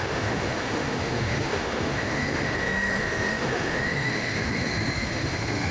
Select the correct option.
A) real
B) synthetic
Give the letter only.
B